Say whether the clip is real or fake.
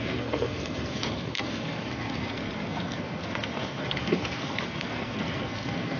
fake